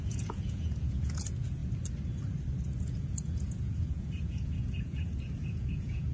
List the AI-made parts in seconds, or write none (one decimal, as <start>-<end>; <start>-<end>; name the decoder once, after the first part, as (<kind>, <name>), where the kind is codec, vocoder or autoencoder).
0.0-1.6 (vocoder, Vocos); 2.6-6.1